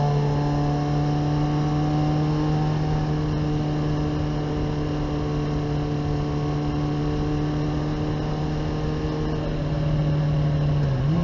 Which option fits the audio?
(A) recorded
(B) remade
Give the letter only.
A